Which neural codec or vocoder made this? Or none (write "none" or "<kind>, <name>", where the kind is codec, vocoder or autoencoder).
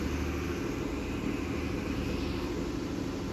none